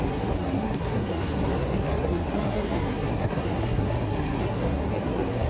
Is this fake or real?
fake